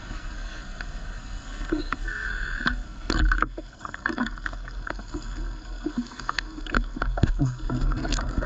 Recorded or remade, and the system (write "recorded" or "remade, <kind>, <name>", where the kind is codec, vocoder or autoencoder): remade, codec, SNAC